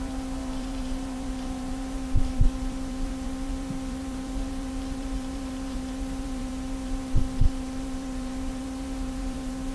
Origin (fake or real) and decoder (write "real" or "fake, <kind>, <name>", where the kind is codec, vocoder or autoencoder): fake, vocoder, BigVGAN v2